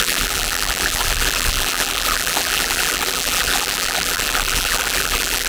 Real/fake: fake